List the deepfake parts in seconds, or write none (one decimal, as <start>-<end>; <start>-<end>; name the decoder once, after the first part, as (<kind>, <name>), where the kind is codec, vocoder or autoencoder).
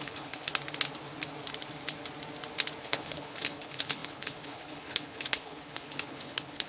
0.0-0.5 (codec, HILCodec); 2.8-6.7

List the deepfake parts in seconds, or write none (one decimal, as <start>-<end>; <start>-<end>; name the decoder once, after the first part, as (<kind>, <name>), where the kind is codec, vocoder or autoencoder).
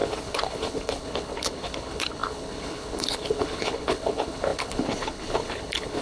0.0-6.0 (codec, HILCodec)